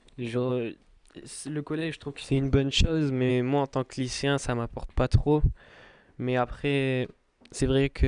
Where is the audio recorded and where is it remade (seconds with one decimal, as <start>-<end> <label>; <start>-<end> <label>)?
0.0-0.5 remade; 0.5-1.8 recorded; 1.8-3.3 remade; 3.3-5.2 recorded; 5.2-5.7 remade; 5.7-8.1 recorded